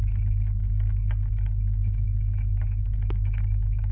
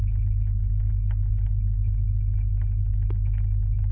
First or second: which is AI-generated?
first